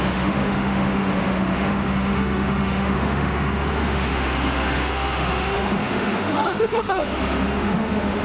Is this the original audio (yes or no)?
no